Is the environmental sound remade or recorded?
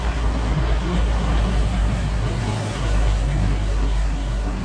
remade